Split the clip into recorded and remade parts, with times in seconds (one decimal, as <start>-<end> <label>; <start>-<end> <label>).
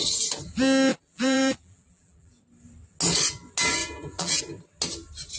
0.0-0.9 recorded; 0.9-2.4 remade; 2.4-3.8 recorded; 3.8-4.4 remade; 4.4-5.4 recorded